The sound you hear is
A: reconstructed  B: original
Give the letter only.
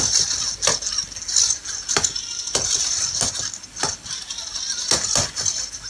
B